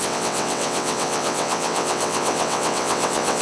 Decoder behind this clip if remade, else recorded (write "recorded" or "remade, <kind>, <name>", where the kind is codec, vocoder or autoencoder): remade, vocoder, WaveNeXt